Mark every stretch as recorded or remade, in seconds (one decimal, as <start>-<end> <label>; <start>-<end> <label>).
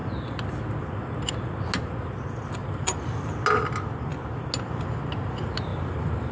0.0-2.6 recorded; 2.6-3.4 remade; 3.4-5.7 recorded; 5.7-6.3 remade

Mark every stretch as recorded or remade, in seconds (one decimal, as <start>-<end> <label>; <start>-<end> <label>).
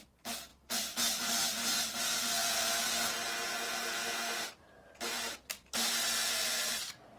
0.0-2.4 recorded; 2.4-6.7 remade; 6.7-7.2 recorded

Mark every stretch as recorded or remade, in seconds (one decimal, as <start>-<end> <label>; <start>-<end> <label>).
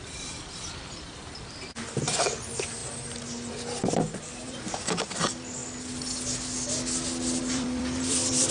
0.0-2.8 remade; 2.8-3.5 recorded; 3.5-5.6 remade; 5.6-7.4 recorded; 7.4-8.5 remade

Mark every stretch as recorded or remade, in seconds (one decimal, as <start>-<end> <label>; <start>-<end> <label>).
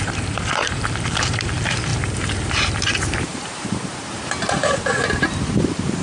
0.0-6.0 remade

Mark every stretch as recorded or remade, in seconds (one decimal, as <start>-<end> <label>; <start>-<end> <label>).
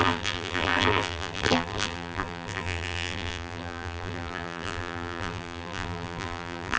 0.0-6.8 remade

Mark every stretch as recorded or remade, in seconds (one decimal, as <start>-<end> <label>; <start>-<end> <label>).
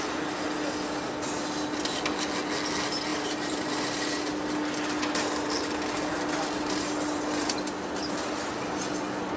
0.0-3.1 recorded; 3.1-3.7 remade; 3.7-9.4 recorded